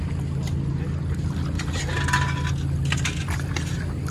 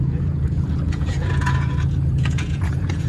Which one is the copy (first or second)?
second